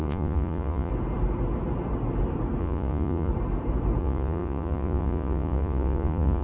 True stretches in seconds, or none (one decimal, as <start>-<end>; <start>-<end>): 0.9-2.6; 3.3-4.0

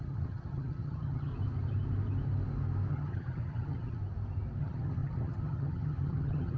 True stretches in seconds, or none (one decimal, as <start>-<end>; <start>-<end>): 1.3-2.9; 4.0-4.6